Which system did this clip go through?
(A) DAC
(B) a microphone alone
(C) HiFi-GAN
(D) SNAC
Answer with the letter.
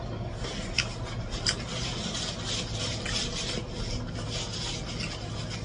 B